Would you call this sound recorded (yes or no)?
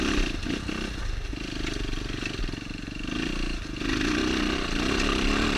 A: yes